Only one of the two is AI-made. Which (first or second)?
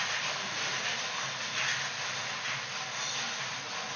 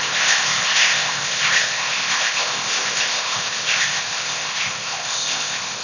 second